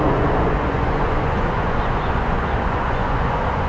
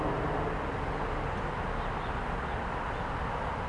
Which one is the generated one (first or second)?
first